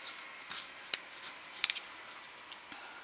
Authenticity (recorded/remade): recorded